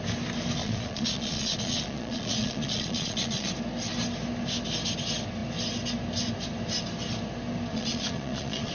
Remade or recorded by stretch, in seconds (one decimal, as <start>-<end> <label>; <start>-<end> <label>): 0.0-0.6 recorded; 0.6-3.5 remade; 3.5-7.7 recorded; 7.7-8.7 remade